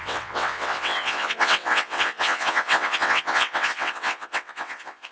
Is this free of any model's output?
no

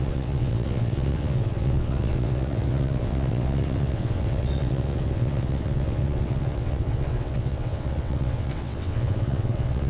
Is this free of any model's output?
no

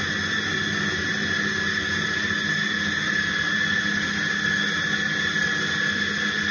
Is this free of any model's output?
yes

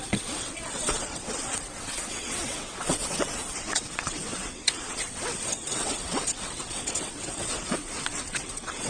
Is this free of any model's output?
no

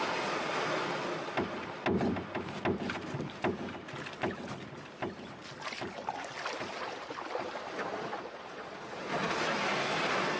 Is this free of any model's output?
yes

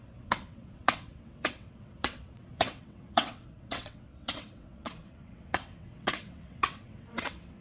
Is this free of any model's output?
no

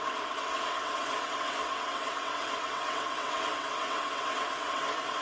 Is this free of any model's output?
no